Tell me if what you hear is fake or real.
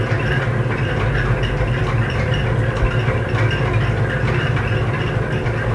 real